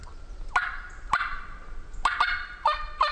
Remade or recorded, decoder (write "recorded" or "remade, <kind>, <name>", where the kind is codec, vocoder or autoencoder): recorded